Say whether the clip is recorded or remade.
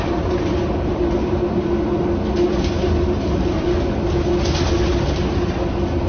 recorded